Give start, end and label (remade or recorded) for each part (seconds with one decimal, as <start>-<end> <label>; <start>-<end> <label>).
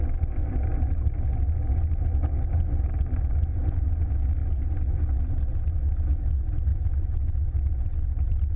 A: 0.0-8.6 recorded